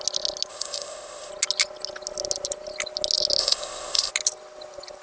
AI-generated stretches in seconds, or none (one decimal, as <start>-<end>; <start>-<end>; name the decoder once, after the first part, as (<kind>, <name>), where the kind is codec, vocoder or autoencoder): 0.5-1.3 (codec, ZipCodec); 3.4-4.1